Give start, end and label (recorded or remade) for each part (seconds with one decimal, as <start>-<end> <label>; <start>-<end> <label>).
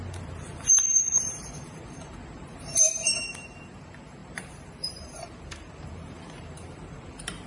0.0-7.5 remade